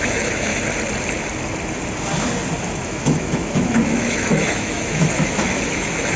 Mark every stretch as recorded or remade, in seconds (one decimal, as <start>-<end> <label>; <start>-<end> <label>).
0.0-0.5 remade; 0.5-2.6 recorded; 2.6-6.2 remade